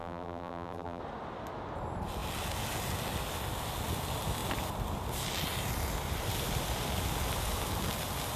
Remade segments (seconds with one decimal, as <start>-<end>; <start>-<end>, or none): 0.0-1.0